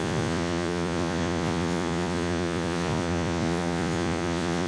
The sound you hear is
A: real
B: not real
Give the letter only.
B